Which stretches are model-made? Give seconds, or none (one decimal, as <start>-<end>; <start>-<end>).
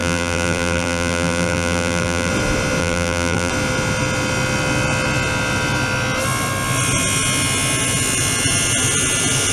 0.0-2.3; 2.8-3.5